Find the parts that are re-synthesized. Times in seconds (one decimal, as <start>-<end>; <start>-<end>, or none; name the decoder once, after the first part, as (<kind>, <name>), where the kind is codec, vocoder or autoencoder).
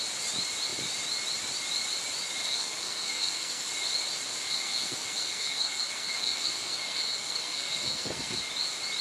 2.4-3.7 (codec, SNAC); 4.3-8.4